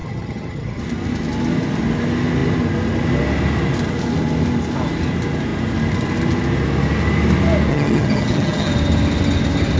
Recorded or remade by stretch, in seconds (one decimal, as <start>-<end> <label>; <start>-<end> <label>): 0.0-0.8 remade; 0.8-7.7 recorded; 7.7-8.7 remade; 8.7-9.8 recorded